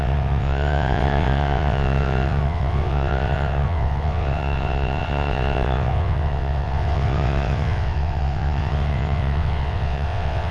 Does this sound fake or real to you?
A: fake